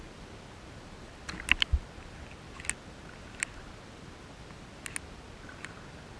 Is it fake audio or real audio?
real